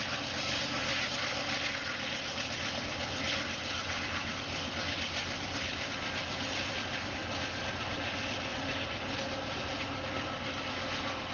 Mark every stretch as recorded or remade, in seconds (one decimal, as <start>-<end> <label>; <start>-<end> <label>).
0.0-3.8 recorded; 3.8-4.7 remade; 4.7-5.2 recorded; 5.2-5.9 remade; 5.9-8.5 recorded; 8.5-10.0 remade; 10.0-11.3 recorded